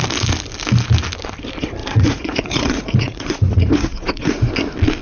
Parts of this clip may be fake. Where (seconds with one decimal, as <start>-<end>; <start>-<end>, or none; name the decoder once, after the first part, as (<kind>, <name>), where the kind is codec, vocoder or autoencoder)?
1.8-4.5 (vocoder, Vocos)